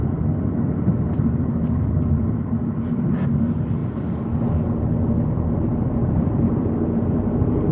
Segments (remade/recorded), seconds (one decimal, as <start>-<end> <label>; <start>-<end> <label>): 0.0-6.0 recorded; 6.0-6.7 remade; 6.7-7.7 recorded